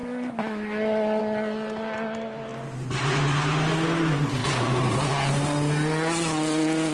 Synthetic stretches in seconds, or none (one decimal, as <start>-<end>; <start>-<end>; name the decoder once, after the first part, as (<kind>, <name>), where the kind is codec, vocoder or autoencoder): 0.0-1.2 (autoencoder, DAC-VAE)